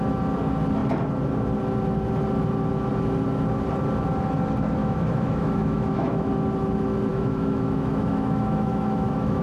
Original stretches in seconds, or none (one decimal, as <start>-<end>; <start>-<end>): 0.0-4.8; 6.3-7.1